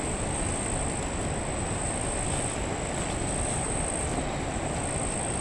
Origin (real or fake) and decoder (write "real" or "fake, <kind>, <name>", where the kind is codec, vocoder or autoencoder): real